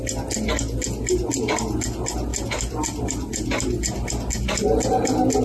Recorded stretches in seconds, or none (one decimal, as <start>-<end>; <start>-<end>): 0.0-2.3; 4.3-5.4